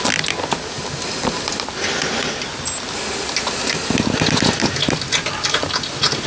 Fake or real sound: real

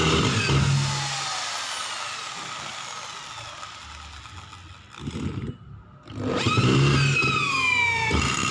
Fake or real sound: real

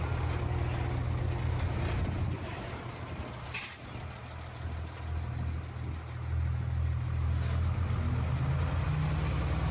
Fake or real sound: real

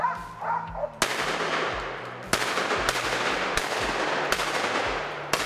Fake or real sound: real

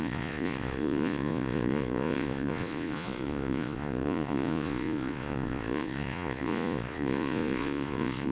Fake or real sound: fake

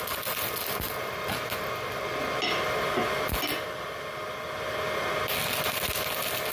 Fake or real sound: real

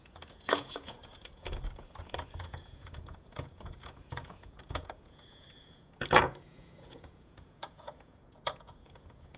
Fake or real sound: fake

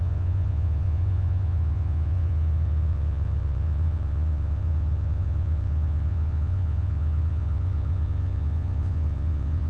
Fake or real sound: fake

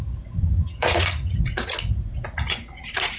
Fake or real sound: fake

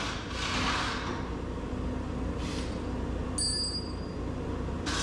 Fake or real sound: real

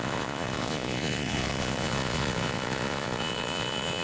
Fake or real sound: fake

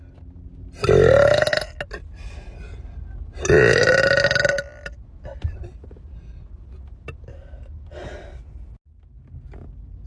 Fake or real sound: real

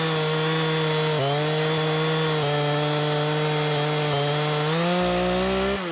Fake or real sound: real